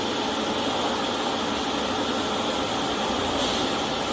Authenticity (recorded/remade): recorded